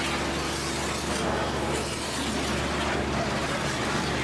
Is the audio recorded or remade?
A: recorded